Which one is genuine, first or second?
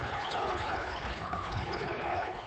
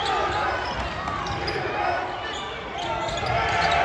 second